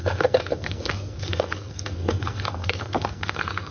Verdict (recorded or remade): remade